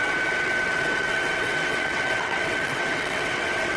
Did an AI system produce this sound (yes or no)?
yes